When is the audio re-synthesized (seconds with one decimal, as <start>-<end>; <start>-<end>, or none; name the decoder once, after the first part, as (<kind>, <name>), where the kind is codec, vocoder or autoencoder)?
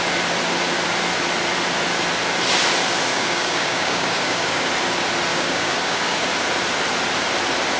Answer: 3.1-4.7 (codec, DAC); 5.3-6.3